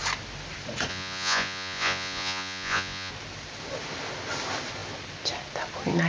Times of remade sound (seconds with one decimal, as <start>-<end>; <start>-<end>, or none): 0.9-3.1